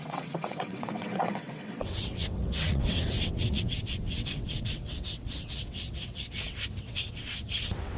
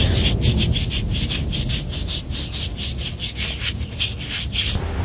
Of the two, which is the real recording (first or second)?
second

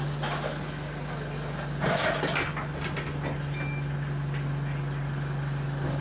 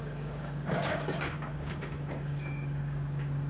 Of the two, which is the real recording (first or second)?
first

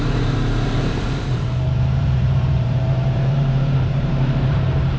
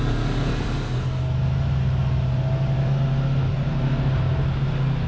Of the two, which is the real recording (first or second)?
second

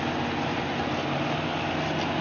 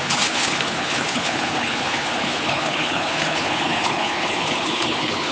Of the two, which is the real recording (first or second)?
first